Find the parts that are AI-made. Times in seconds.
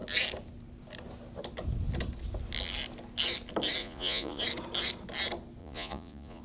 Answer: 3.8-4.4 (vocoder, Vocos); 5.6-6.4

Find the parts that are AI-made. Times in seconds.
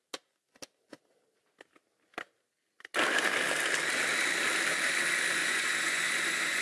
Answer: 5.4-6.6 (vocoder, Vocos)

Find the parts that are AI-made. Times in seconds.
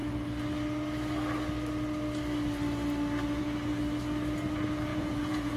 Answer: 4.9-5.6 (vocoder, Vocos)